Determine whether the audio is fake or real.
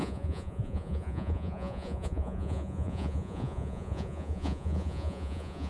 fake